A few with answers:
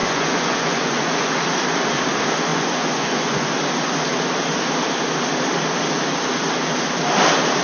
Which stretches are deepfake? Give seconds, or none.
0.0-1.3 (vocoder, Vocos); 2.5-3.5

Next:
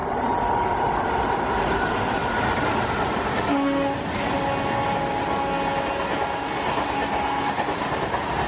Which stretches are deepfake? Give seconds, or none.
0.0-1.5 (vocoder, BigVGAN v2)

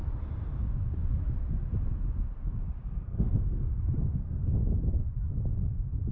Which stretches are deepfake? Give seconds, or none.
2.8-4.4 (codec, SNAC)

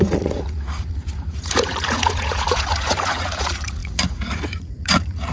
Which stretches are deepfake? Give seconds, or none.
0.0-5.3 (vocoder, Vocos)